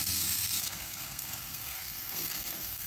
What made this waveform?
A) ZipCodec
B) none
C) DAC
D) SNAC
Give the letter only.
D